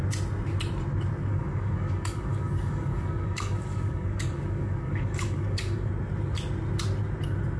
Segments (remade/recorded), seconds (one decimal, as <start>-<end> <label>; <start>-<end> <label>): 0.0-1.3 recorded; 1.3-5.9 remade; 5.9-7.6 recorded